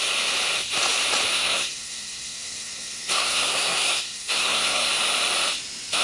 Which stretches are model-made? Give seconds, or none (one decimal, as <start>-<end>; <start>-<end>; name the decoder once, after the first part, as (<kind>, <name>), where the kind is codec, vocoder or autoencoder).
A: 1.3-4.9 (codec, SNAC)